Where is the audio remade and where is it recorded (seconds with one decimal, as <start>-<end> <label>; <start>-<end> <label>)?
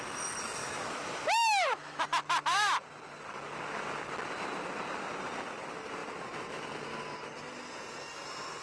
0.0-0.6 recorded; 0.6-2.1 remade; 2.1-8.6 recorded